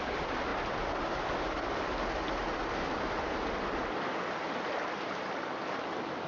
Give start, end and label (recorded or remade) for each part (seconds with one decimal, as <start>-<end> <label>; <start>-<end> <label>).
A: 0.0-6.3 recorded